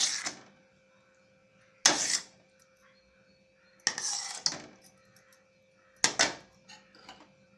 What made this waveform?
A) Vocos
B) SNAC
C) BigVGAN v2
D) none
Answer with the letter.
D